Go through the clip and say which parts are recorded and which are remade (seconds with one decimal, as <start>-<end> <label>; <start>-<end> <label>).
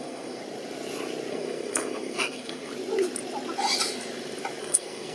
0.0-0.4 remade; 0.4-1.3 recorded; 1.3-2.7 remade; 2.7-4.6 recorded; 4.6-5.1 remade